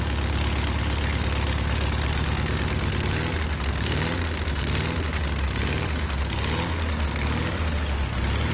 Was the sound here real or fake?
real